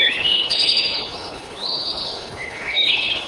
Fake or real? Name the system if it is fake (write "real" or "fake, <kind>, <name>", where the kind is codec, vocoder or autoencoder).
fake, codec, HILCodec